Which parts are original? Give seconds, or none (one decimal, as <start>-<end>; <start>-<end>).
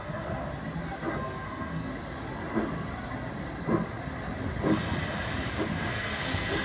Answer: 0.4-1.1; 1.9-5.9